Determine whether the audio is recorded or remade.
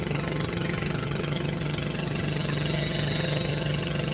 remade